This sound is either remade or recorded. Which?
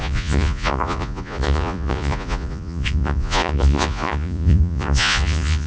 remade